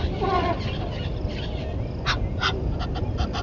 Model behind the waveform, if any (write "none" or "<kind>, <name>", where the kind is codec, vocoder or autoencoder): none